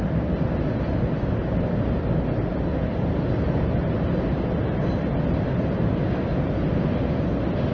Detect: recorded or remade recorded